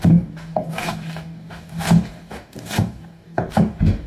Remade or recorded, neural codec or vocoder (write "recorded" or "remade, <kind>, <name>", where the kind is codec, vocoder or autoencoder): remade, codec, DAC